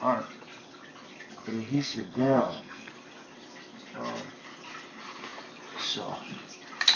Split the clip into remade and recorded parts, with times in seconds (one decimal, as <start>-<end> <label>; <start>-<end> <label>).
0.0-1.5 recorded; 1.5-2.9 remade; 2.9-7.0 recorded